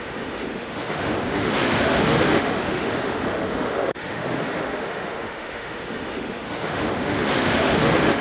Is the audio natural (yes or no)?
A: no